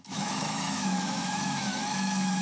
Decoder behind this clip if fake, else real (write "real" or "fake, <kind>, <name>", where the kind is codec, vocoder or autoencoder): fake, autoencoder, DAC-VAE